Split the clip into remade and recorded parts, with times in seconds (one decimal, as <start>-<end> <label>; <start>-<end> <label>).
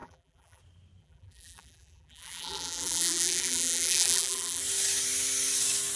0.0-0.6 remade; 0.6-1.0 recorded; 1.0-4.6 remade; 4.6-6.0 recorded